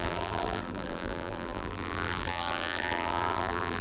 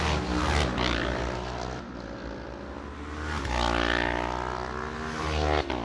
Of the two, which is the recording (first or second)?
second